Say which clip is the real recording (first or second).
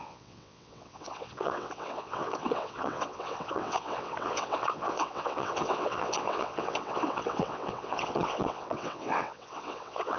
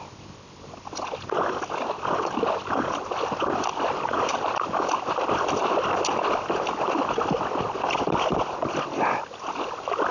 second